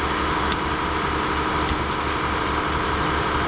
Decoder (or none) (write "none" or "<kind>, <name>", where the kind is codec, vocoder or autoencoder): none